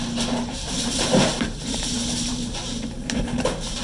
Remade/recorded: remade